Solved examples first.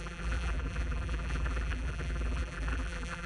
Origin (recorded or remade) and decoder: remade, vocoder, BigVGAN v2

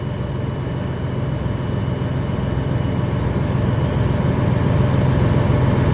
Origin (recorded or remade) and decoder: recorded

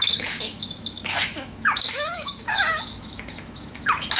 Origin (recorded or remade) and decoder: remade, autoencoder, DAC-VAE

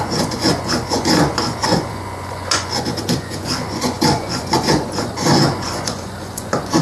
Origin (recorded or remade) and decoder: remade, vocoder, Vocos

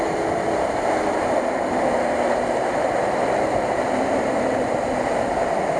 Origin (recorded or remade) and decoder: recorded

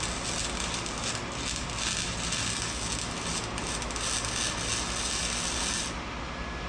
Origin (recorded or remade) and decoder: recorded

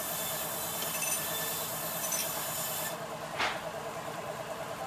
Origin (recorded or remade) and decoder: remade, vocoder, BigVGAN v2